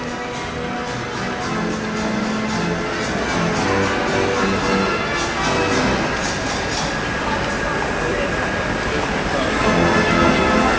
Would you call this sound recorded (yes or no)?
yes